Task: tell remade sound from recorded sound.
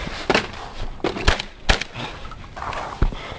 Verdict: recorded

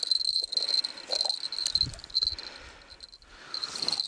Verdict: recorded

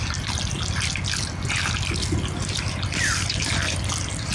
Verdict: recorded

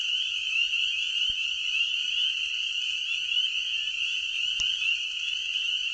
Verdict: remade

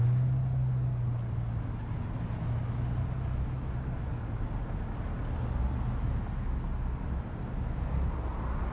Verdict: recorded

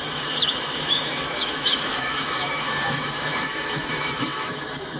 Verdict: remade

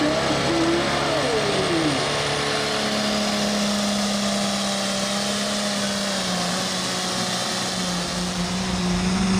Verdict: recorded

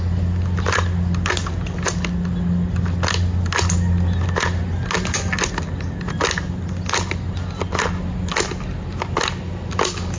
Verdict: recorded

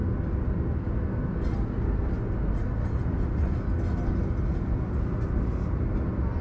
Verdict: recorded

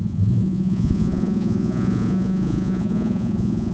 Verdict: remade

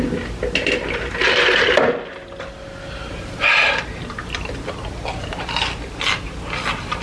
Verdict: recorded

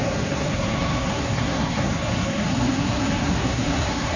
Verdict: remade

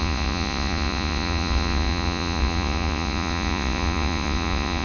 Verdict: remade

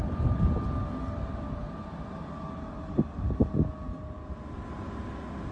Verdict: recorded